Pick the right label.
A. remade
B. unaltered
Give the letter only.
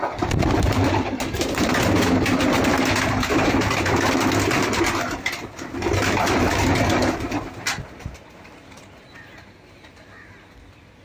B